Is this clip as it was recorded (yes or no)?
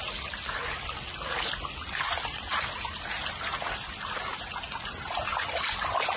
yes